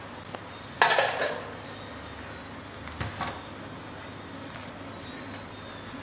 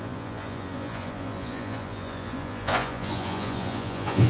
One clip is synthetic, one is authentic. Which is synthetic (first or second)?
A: second